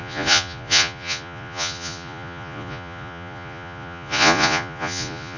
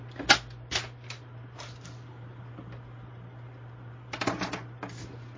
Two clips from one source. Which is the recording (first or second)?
second